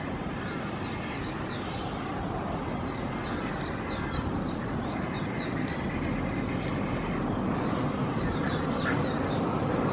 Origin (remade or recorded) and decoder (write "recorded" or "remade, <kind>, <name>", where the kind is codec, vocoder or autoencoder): recorded